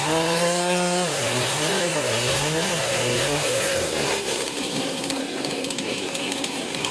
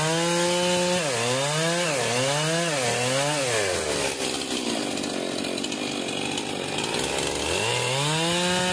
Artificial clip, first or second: first